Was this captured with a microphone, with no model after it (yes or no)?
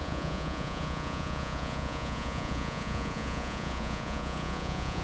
no